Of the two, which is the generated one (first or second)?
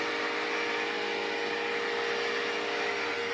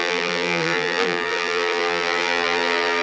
second